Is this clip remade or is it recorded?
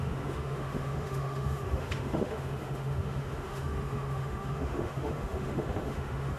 remade